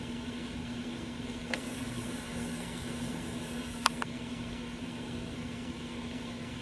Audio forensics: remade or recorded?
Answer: remade